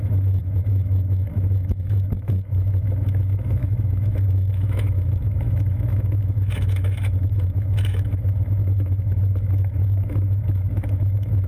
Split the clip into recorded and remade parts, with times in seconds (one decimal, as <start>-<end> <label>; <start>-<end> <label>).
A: 0.0-11.5 remade